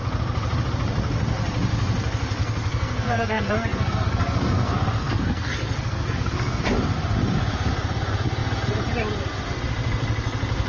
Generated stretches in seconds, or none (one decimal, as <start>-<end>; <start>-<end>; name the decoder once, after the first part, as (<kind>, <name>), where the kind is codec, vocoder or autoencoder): 2.4-6.6 (codec, SNAC)